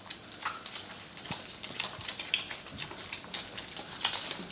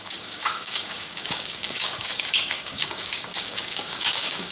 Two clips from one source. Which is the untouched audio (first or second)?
first